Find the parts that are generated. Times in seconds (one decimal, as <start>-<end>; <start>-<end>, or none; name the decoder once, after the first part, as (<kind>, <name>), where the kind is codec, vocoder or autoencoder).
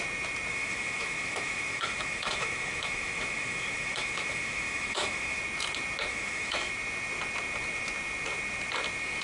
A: 0.5-5.4 (autoencoder, DAC-VAE); 6.1-6.7